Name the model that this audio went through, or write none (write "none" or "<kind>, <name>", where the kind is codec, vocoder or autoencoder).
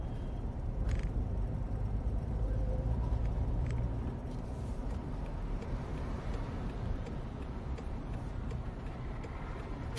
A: vocoder, BigVGAN v2